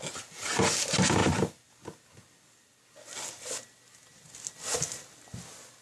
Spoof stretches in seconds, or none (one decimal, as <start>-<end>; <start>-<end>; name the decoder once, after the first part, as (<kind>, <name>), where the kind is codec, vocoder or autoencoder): none